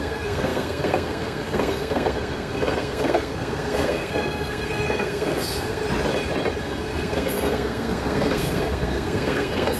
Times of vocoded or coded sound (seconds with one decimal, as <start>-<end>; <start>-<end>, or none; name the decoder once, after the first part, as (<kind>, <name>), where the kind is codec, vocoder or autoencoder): 0.0-5.8 (codec, SNAC); 6.6-9.8